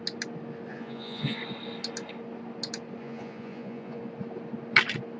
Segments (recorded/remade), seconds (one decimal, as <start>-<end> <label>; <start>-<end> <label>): 0.0-0.7 recorded; 0.7-1.4 remade; 1.4-3.0 recorded; 3.0-4.0 remade; 4.0-5.2 recorded